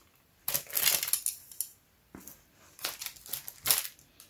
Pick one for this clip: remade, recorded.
recorded